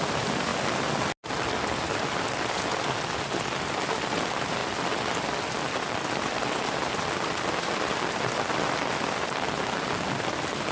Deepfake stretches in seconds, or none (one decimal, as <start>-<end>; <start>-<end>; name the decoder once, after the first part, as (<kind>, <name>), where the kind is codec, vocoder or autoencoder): none